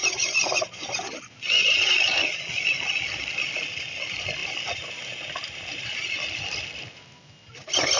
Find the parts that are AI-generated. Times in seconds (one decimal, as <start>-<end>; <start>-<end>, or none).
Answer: none